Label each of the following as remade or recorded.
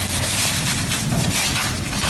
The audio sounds remade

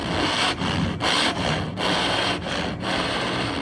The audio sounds recorded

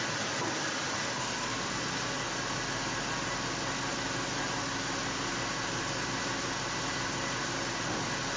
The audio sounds recorded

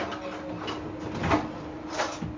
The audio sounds recorded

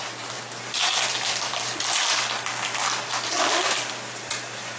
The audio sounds recorded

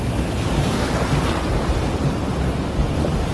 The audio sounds recorded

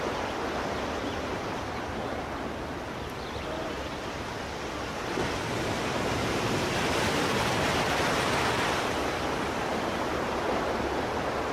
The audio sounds recorded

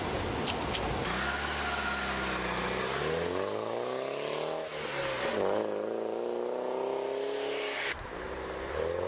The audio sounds recorded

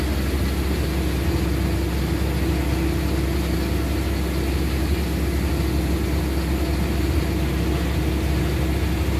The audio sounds recorded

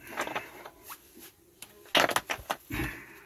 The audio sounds recorded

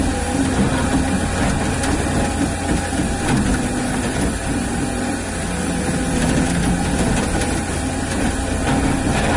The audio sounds recorded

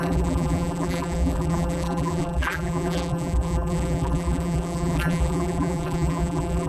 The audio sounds remade